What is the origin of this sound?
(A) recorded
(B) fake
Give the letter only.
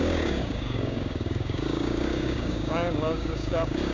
B